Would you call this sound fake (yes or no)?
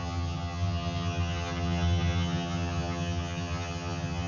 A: yes